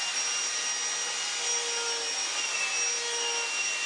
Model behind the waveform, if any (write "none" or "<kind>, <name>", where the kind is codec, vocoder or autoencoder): none